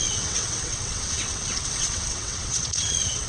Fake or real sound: fake